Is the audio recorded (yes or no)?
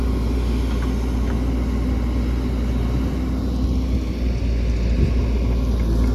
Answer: yes